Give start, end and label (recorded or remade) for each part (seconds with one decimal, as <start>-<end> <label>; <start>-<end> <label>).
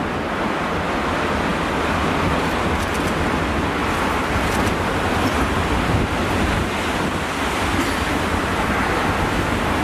0.0-9.8 recorded